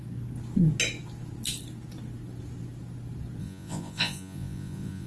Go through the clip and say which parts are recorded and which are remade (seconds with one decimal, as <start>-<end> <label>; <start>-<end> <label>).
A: 0.0-3.4 recorded; 3.4-5.1 remade